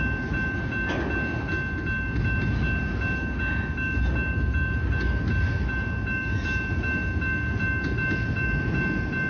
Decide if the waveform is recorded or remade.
recorded